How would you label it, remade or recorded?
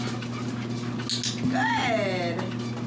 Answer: recorded